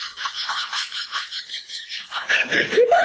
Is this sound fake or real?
fake